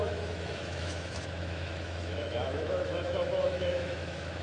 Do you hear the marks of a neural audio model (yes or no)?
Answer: yes